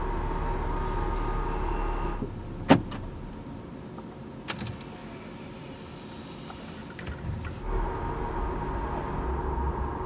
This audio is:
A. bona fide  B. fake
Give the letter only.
A